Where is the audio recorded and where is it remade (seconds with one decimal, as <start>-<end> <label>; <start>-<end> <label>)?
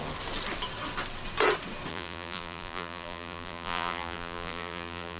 0.0-1.9 recorded; 1.9-5.2 remade